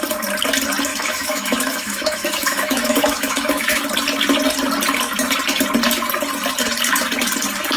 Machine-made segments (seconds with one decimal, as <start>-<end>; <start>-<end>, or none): 0.9-3.8